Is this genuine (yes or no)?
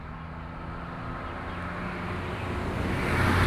yes